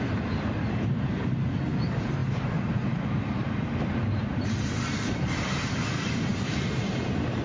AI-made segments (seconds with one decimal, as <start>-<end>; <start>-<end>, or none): 0.0-7.4